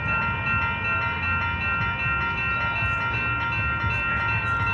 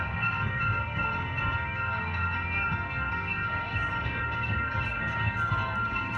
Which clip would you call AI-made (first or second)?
second